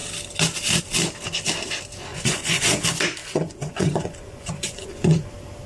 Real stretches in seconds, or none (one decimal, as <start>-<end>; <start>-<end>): 0.0-2.1; 2.7-3.2; 5.3-5.7